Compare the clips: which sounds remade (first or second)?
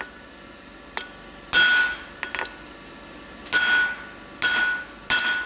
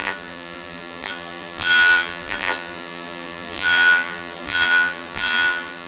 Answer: second